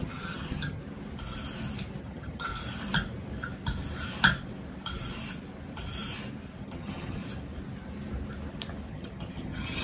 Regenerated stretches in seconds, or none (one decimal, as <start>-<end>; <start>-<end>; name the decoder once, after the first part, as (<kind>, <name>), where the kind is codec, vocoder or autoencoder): 0.0-0.8 (vocoder, HiFi-GAN); 2.0-2.5; 6.6-7.2; 8.9-9.8